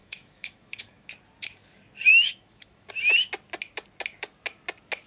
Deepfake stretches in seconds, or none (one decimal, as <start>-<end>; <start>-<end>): 0.0-1.1; 2.1-2.9